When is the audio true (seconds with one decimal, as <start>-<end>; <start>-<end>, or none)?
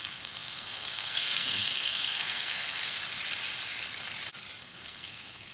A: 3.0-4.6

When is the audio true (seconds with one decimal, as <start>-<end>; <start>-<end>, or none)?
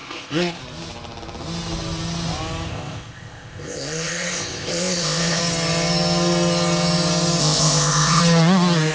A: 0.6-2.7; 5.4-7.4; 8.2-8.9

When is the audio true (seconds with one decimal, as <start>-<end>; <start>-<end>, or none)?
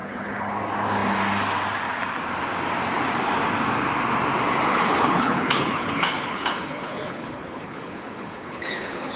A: 0.5-4.7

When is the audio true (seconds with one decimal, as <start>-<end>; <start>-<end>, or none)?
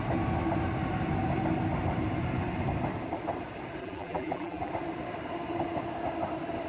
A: 0.0-3.8; 4.7-6.7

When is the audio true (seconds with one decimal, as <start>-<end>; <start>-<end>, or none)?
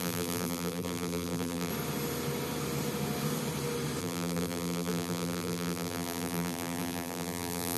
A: 1.7-4.0